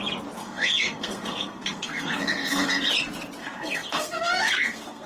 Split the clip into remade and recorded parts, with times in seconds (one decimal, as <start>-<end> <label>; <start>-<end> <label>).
0.0-0.4 recorded; 0.4-2.9 remade; 2.9-3.4 recorded; 3.4-5.1 remade